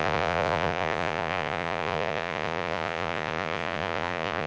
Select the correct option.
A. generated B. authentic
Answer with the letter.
A